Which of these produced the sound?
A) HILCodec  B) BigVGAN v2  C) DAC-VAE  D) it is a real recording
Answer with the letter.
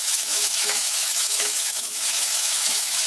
C